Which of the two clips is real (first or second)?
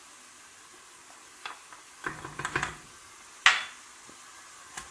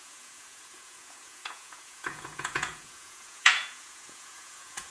first